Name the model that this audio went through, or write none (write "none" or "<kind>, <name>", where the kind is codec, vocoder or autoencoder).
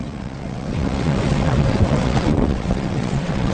vocoder, WaveNeXt